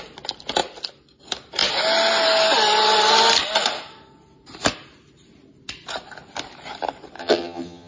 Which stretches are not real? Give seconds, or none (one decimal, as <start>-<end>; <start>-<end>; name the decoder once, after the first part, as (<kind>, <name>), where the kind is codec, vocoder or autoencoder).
7.2-7.9 (vocoder, HiFi-GAN)